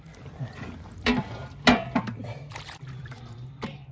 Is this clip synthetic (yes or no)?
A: yes